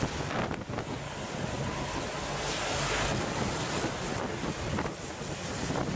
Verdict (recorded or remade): recorded